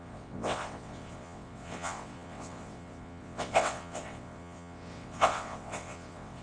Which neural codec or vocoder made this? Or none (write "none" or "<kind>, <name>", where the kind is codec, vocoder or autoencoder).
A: vocoder, WaveNeXt